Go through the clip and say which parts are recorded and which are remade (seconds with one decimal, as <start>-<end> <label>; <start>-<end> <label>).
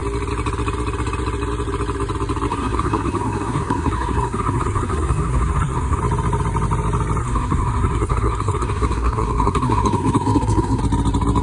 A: 0.0-2.5 recorded; 2.5-6.0 remade; 6.0-7.2 recorded; 7.2-10.8 remade; 10.8-11.4 recorded